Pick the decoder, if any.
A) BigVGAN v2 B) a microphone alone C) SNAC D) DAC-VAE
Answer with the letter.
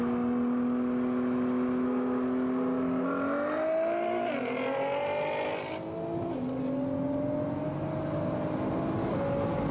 B